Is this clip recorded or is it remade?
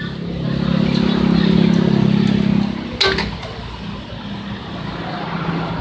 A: recorded